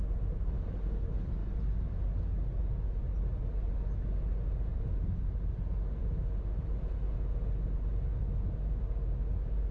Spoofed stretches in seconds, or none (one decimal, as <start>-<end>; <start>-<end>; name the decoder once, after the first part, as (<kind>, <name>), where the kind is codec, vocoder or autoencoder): 1.4-2.0 (vocoder, BigVGAN v2); 4.7-5.4